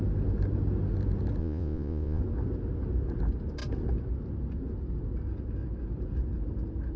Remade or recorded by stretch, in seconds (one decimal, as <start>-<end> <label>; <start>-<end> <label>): 0.0-1.4 recorded; 1.4-2.2 remade; 2.2-7.0 recorded